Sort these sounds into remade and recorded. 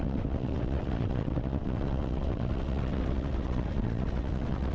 remade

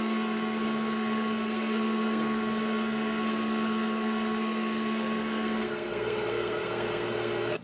remade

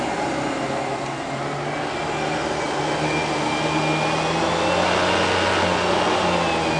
recorded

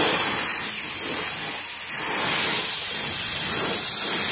recorded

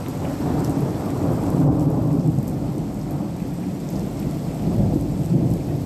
recorded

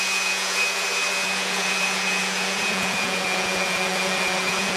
remade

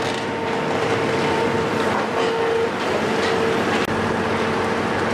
recorded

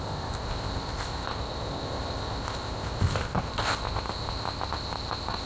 remade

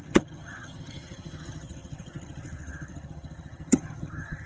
remade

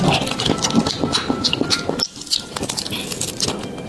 recorded